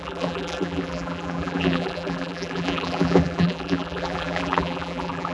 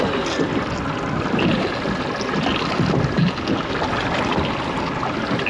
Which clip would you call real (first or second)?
second